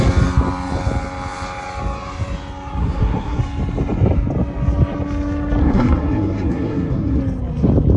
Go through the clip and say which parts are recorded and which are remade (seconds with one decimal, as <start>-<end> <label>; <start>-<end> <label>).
0.0-2.8 recorded; 2.8-3.4 remade; 3.4-5.6 recorded; 5.6-7.2 remade; 7.2-8.0 recorded